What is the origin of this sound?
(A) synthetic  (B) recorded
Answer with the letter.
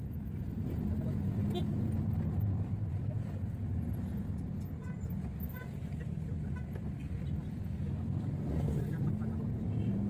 B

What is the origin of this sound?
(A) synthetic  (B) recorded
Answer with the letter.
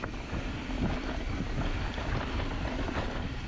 B